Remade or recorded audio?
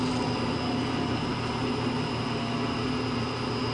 recorded